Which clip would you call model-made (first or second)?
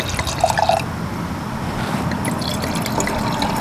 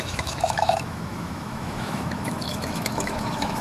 second